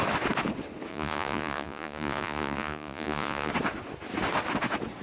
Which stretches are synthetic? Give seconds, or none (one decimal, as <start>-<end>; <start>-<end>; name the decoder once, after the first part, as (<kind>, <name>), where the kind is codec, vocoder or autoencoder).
0.9-3.5 (vocoder, Vocos)